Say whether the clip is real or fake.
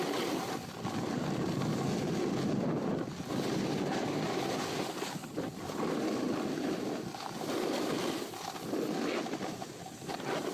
real